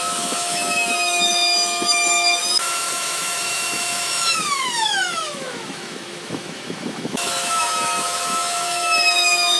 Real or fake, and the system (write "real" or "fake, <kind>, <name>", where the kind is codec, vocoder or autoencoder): fake, autoencoder, DAC-VAE